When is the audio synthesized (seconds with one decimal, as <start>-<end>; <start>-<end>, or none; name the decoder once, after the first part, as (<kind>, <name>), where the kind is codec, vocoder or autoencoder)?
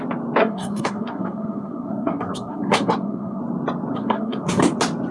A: 0.4-3.4 (codec, SNAC); 3.9-4.6